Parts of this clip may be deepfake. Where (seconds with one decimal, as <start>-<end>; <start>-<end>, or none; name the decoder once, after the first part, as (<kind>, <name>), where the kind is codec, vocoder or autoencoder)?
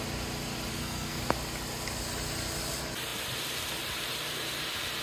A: 0.7-1.2 (codec, SNAC)